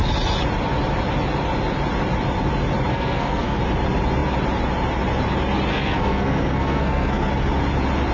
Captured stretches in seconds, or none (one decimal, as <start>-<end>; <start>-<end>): 0.0-2.9; 3.6-5.7; 7.3-8.1